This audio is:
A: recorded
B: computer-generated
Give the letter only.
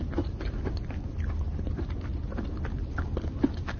A